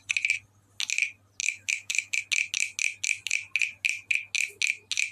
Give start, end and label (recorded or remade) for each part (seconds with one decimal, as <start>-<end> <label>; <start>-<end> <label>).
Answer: 0.0-1.4 recorded; 1.4-2.2 remade; 2.2-5.1 recorded